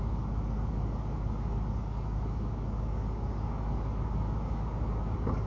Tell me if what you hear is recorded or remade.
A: remade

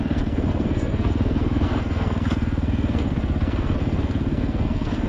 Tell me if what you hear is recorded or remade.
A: remade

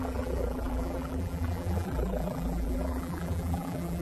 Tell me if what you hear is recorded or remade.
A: remade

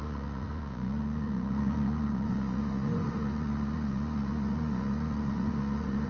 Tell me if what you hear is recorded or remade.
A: remade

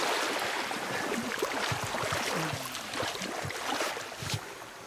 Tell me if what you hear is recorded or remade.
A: recorded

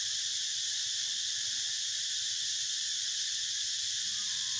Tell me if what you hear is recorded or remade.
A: remade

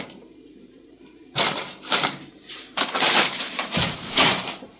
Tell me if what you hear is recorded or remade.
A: remade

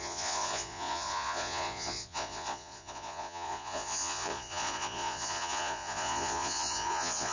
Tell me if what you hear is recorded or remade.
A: remade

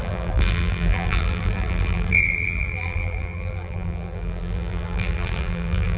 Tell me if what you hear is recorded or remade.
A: remade